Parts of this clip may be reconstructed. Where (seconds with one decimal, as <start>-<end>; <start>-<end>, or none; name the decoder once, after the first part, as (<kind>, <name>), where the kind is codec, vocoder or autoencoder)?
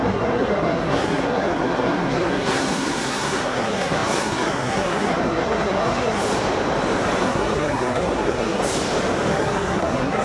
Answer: 0.0-6.2 (codec, SNAC); 7.2-8.6; 9.3-10.2